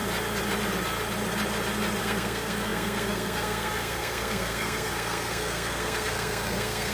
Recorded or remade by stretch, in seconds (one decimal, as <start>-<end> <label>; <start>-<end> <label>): 0.0-2.0 recorded; 2.0-6.9 remade